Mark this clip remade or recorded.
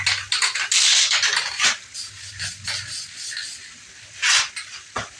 recorded